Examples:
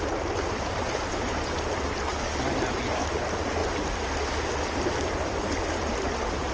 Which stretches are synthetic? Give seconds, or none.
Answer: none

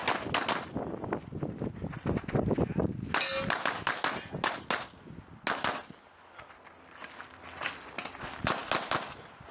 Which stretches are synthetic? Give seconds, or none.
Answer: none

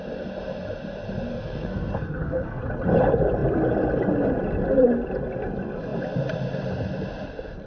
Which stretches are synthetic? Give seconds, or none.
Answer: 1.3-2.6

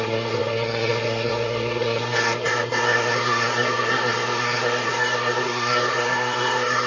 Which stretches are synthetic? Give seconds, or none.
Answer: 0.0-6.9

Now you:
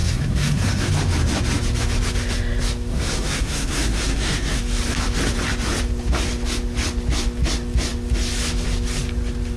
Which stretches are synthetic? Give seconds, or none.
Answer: 0.0-0.9; 2.9-4.6

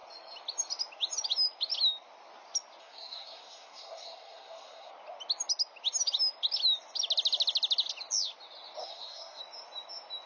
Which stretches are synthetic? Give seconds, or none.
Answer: 2.8-4.9; 8.8-9.4